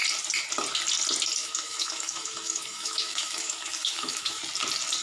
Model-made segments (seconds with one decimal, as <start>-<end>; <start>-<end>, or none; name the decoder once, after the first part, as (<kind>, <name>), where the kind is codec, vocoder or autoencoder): 1.4-4.4 (autoencoder, DAC-VAE)